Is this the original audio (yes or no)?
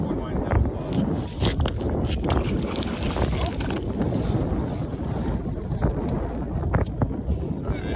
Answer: yes